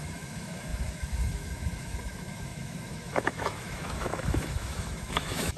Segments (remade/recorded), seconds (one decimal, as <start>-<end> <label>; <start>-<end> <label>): 0.0-5.6 remade